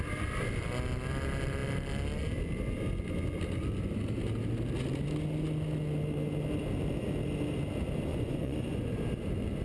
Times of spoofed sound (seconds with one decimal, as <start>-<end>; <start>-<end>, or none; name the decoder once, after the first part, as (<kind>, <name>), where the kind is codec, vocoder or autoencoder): 8.1-9.0 (vocoder, Vocos)